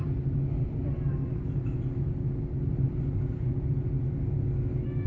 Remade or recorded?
recorded